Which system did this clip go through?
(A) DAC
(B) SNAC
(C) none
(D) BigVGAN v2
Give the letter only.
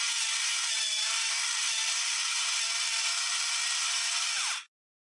C